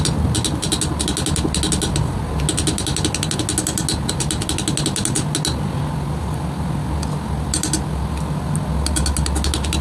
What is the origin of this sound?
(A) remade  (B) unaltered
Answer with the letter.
B